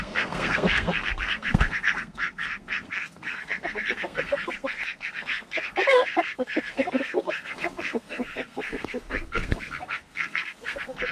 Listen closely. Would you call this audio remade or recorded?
remade